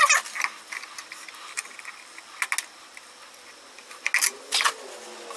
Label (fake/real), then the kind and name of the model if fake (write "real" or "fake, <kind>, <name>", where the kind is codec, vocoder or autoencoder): real